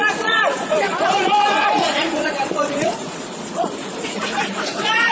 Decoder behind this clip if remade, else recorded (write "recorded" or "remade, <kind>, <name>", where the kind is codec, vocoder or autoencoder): remade, vocoder, Vocos